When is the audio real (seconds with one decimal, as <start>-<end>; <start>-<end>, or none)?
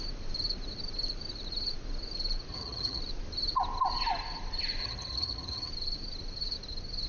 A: 0.0-2.5; 3.0-4.8; 5.7-7.1